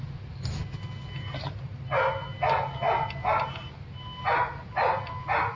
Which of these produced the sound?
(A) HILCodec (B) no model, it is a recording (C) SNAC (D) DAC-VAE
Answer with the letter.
B